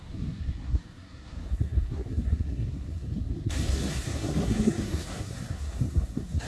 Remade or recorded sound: remade